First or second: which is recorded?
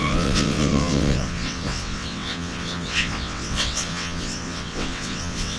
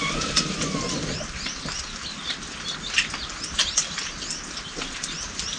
second